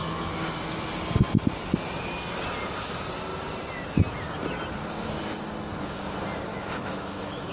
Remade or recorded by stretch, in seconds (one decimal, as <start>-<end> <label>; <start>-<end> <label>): 0.0-6.5 recorded; 6.5-7.5 remade

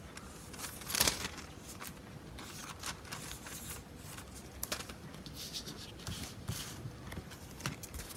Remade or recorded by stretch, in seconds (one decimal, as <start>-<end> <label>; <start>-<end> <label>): 0.0-8.2 recorded

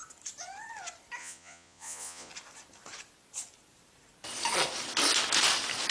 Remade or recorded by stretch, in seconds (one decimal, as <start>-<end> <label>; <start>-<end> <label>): 0.0-1.2 recorded; 1.2-2.3 remade; 2.3-5.9 recorded

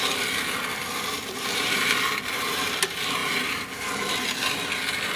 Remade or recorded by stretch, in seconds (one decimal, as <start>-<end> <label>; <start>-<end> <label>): 0.0-3.2 remade; 3.2-5.2 recorded

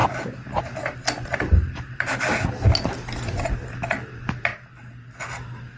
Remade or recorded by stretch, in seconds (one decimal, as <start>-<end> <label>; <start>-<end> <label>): 0.0-5.8 recorded

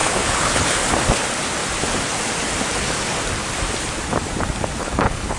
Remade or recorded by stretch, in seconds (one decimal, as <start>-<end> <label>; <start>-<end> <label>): 0.0-0.8 remade; 0.8-4.8 recorded; 4.8-5.4 remade

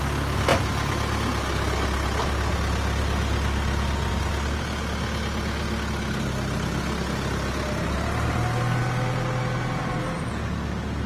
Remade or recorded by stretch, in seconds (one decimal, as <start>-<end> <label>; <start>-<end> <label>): 0.0-11.1 recorded

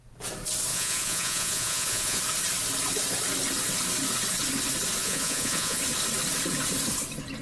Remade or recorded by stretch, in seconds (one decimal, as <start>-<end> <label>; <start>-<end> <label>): 0.0-0.7 recorded; 0.7-2.2 remade; 2.2-5.0 recorded; 5.0-5.8 remade; 5.8-7.4 recorded